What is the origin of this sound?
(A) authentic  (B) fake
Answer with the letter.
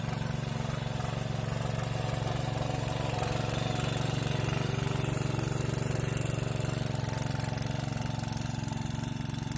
A